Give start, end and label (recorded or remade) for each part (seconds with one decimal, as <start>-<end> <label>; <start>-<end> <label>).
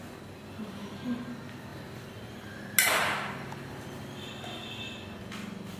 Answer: 0.0-5.8 recorded